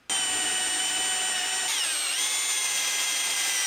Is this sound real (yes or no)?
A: yes